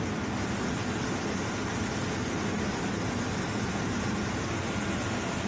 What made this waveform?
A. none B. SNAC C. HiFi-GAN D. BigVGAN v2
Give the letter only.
A